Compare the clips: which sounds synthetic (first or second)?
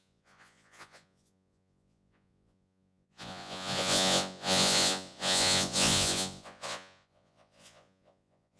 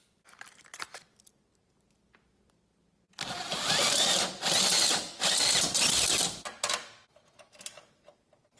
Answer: first